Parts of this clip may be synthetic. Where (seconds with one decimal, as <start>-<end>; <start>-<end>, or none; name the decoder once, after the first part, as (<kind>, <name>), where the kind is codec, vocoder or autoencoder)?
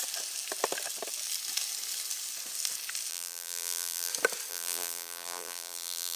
3.1-4.1 (vocoder, BigVGAN v2); 4.5-6.2